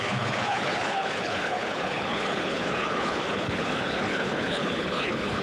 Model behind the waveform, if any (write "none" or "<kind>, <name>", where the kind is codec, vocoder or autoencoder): codec, HILCodec